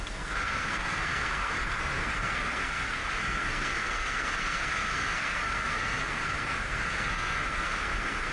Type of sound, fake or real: fake